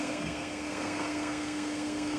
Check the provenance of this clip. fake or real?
fake